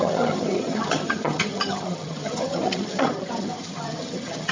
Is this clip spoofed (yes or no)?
yes